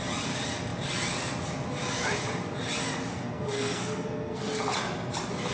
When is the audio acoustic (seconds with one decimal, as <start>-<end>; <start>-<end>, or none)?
0.0-3.1; 4.6-5.5